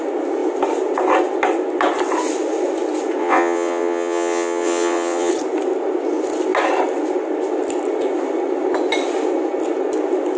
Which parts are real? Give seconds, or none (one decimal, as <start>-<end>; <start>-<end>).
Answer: 0.0-3.2; 5.3-10.4